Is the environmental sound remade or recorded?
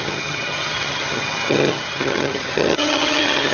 remade